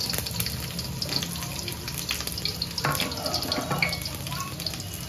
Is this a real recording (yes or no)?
yes